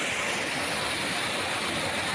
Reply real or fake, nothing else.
real